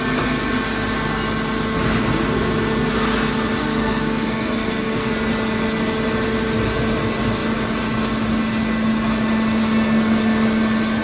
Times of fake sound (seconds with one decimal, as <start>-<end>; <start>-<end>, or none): 3.6-5.1